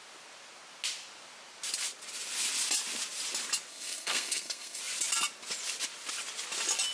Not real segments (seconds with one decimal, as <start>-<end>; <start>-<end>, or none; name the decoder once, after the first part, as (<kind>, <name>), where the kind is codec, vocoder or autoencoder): 3.7-4.8 (codec, SNAC)